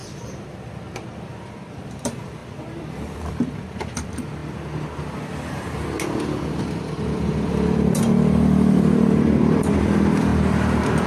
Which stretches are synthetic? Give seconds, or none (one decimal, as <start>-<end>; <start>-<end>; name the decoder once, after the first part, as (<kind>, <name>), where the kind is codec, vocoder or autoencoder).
0.0-2.4 (vocoder, BigVGAN v2); 2.9-4.4; 6.6-10.3